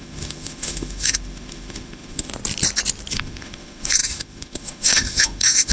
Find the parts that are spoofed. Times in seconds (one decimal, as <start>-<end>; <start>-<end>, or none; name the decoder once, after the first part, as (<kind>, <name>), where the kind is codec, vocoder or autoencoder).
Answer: 0.0-2.3 (autoencoder, DAC-VAE); 3.1-5.7